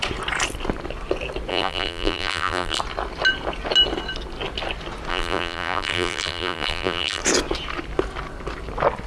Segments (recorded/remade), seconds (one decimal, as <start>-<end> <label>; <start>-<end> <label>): 0.0-1.5 recorded; 1.5-2.8 remade; 2.8-5.1 recorded; 5.1-7.2 remade; 7.2-9.1 recorded